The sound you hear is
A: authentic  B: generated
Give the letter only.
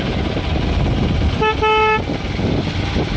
A